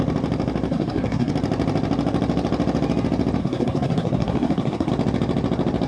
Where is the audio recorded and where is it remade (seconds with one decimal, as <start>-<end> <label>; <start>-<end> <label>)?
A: 0.0-0.7 recorded; 0.7-1.3 remade; 1.3-3.4 recorded; 3.4-4.9 remade; 4.9-5.9 recorded